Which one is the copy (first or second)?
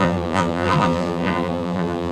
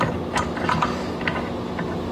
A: first